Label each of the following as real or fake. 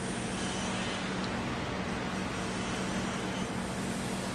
real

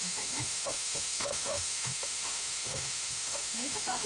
fake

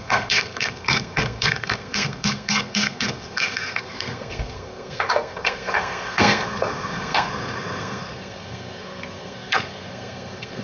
fake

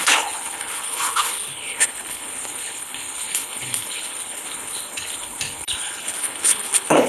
fake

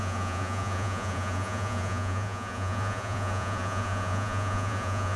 fake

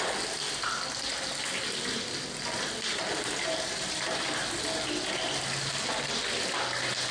real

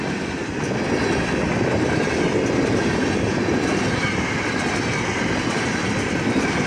real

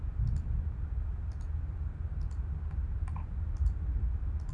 real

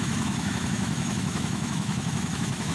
fake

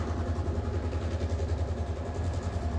real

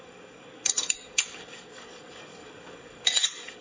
fake